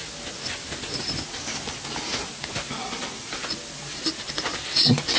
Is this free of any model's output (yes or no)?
yes